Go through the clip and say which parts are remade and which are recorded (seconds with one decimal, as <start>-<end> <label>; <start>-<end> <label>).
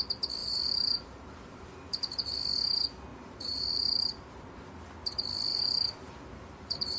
0.0-0.4 recorded; 0.4-2.3 remade; 2.3-3.1 recorded; 3.1-4.7 remade; 4.7-5.5 recorded; 5.5-7.0 remade